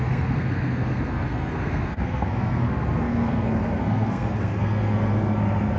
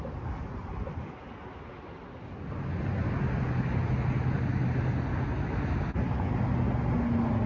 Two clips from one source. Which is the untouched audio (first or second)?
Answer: second